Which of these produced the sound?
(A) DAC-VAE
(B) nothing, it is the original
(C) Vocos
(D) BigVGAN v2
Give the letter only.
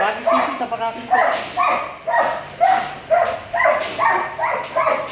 B